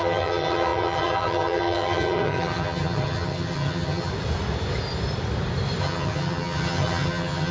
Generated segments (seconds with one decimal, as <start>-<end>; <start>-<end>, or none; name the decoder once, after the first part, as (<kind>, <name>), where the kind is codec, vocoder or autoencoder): 0.0-4.1 (vocoder, HiFi-GAN); 5.8-7.5